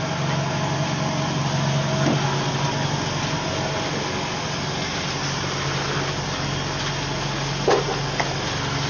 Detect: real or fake real